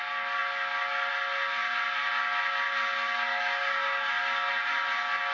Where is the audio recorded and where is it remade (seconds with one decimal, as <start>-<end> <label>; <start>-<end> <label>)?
0.0-3.3 recorded; 3.3-4.5 remade; 4.5-5.3 recorded